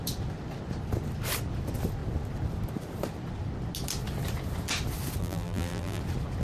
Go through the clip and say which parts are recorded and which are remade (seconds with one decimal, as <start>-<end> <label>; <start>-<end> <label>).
0.0-5.2 recorded; 5.2-6.0 remade; 6.0-6.4 recorded